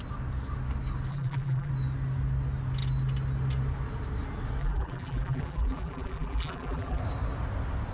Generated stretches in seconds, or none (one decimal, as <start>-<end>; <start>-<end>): 1.1-1.7; 4.6-7.0